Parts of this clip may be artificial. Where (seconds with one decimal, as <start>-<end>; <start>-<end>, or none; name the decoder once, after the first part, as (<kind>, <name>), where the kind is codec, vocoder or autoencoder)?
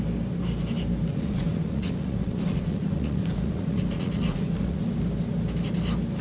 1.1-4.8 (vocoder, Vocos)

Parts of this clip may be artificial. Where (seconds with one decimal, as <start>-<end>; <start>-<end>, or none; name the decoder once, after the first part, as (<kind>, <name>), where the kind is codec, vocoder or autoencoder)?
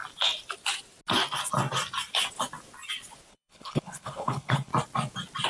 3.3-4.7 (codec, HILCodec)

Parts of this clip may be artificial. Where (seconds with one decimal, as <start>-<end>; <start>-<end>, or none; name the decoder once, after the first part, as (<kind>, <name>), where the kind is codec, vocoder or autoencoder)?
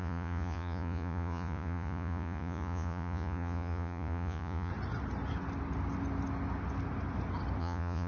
0.0-4.7 (vocoder, Vocos); 7.6-8.1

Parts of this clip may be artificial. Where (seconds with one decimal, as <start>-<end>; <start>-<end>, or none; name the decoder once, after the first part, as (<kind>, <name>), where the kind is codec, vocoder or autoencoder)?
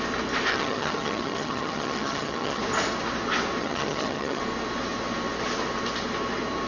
0.5-2.6 (vocoder, HiFi-GAN); 3.6-4.4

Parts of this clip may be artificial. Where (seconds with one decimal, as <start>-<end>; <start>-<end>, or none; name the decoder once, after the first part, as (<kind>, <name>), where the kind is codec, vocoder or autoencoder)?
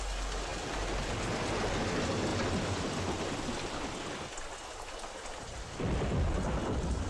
none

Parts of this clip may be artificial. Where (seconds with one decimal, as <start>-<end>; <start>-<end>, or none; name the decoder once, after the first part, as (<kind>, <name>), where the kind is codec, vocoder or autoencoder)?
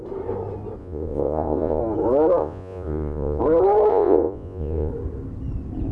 0.8-1.8 (vocoder, Vocos); 2.4-3.4; 3.9-4.9